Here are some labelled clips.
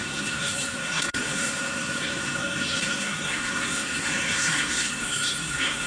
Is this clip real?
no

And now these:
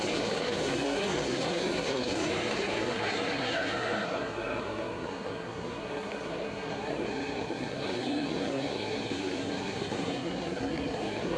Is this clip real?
no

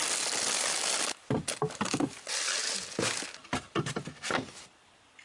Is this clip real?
yes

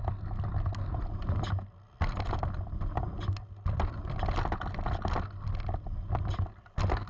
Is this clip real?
yes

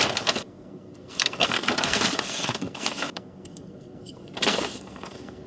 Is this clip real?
no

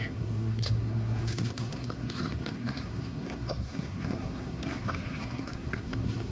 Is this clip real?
no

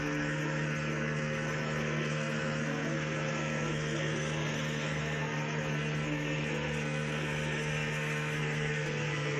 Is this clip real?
no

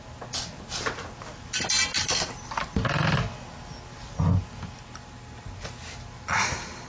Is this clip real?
yes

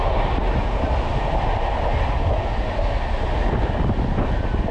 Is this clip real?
yes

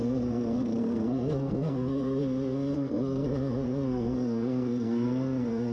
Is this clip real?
no